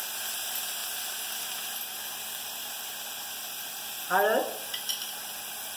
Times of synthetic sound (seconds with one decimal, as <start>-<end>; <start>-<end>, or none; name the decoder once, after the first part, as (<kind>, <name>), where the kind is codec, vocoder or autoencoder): none